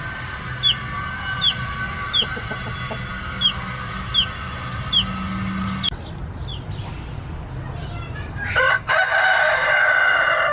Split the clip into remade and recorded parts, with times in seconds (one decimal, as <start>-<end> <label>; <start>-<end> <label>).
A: 0.0-10.5 recorded